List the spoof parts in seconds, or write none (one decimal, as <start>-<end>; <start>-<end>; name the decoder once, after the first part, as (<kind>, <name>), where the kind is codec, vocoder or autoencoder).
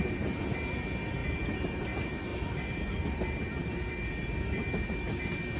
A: none